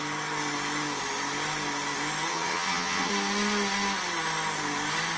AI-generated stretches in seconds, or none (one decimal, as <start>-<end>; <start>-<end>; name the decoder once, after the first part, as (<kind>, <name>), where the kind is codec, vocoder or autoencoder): 2.3-3.1 (vocoder, HiFi-GAN)